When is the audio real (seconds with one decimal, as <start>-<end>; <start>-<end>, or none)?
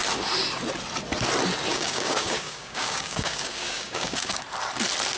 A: 0.0-1.7; 4.4-5.2